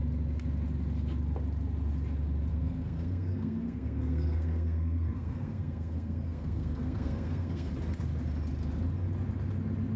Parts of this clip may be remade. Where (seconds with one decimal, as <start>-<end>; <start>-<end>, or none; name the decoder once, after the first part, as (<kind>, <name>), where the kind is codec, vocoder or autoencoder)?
2.5-7.7 (codec, SNAC)